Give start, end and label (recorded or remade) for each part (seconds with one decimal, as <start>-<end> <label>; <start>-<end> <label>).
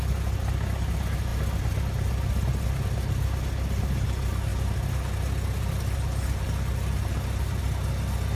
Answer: 0.0-8.4 recorded